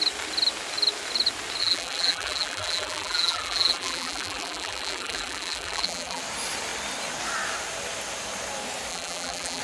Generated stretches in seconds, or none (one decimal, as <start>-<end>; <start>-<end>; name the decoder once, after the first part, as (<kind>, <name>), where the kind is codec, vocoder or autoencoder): 1.6-6.2 (vocoder, BigVGAN v2); 8.9-9.6